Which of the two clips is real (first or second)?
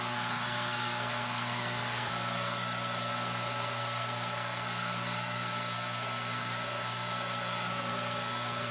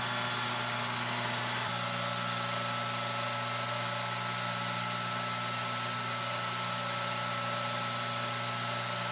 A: second